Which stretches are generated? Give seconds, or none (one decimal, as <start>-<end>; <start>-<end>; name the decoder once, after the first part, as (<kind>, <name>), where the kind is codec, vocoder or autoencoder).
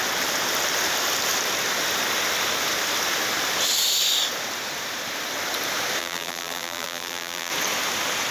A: 6.0-7.5 (vocoder, BigVGAN v2)